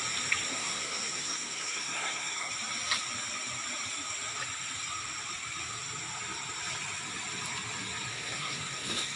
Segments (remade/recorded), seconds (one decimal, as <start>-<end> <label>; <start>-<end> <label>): 0.0-0.5 recorded; 0.5-2.5 remade; 2.5-8.1 recorded; 8.1-9.2 remade